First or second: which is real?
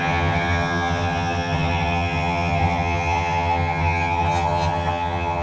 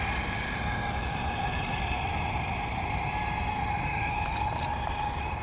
second